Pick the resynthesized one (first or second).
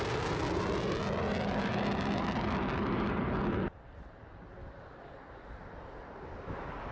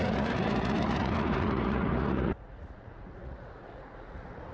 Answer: second